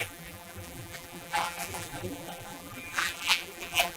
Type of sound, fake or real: fake